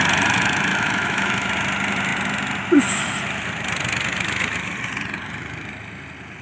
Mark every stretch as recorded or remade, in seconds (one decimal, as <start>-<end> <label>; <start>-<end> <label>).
0.0-0.7 recorded; 0.7-1.5 remade; 1.5-6.4 recorded

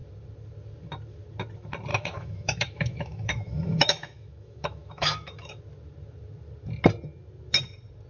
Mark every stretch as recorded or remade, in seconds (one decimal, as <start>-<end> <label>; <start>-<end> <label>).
0.0-1.9 recorded; 1.9-5.6 remade; 5.6-8.1 recorded

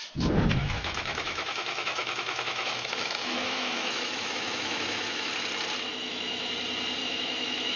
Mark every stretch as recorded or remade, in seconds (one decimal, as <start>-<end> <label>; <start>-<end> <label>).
0.0-0.6 recorded; 0.6-5.3 remade; 5.3-5.9 recorded; 5.9-6.5 remade; 6.5-7.0 recorded; 7.0-7.8 remade

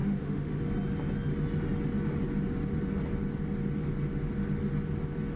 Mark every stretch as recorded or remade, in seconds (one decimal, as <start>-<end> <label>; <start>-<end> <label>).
0.0-0.6 remade; 0.6-5.4 recorded

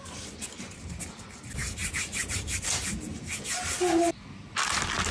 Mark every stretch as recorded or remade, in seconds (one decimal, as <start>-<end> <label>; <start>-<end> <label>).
0.0-5.1 recorded